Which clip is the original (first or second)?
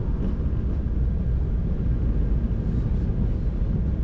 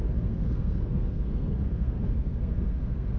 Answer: first